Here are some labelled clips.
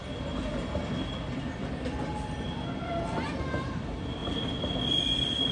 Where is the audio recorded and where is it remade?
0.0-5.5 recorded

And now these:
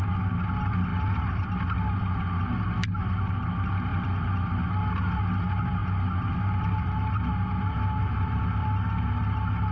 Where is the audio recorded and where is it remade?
0.0-8.0 recorded; 8.0-8.7 remade; 8.7-9.7 recorded

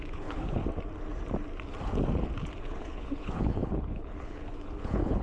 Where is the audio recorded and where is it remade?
0.0-0.6 remade; 0.6-2.6 recorded; 2.6-5.2 remade

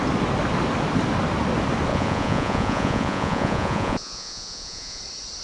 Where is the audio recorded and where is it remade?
0.0-1.9 recorded; 1.9-5.0 remade; 5.0-5.4 recorded

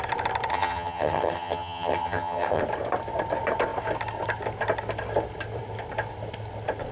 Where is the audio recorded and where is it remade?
0.0-0.5 recorded; 0.5-2.6 remade; 2.6-6.9 recorded

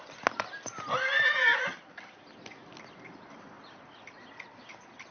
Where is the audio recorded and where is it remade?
0.0-5.1 recorded